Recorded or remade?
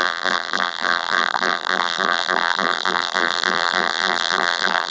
remade